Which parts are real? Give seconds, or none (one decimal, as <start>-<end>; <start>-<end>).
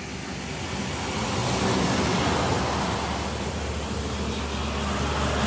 0.0-5.5